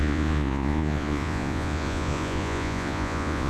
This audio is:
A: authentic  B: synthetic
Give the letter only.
B